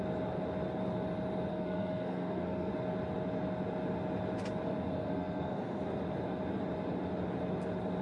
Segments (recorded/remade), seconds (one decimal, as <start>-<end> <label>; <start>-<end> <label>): 0.0-1.5 recorded; 1.5-2.7 remade; 2.7-4.9 recorded; 4.9-5.8 remade; 5.8-8.0 recorded